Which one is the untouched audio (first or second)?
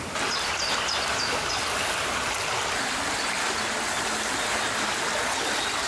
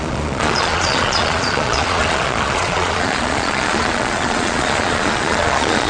first